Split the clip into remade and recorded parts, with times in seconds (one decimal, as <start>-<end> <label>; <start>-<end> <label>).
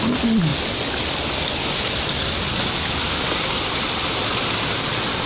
0.0-5.3 recorded